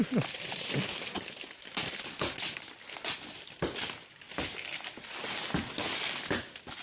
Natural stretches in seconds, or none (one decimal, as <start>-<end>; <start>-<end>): 0.0-6.8